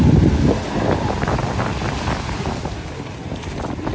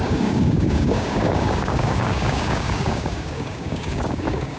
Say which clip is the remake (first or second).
second